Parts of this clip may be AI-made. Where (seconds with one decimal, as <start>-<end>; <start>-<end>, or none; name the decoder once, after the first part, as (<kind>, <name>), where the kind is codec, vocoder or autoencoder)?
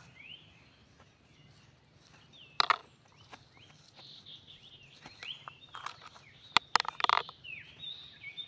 none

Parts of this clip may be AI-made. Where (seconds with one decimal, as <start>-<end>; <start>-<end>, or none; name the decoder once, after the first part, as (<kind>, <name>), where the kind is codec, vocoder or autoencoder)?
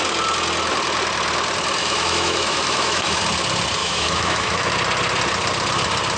1.8-3.2 (autoencoder, DAC-VAE); 3.8-4.7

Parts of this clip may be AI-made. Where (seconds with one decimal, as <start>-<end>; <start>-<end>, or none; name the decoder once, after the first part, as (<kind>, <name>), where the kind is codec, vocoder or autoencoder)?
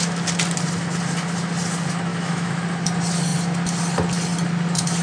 2.1-2.6 (autoencoder, DAC-VAE)